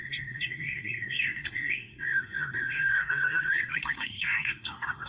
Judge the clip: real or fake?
fake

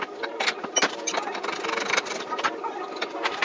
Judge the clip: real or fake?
fake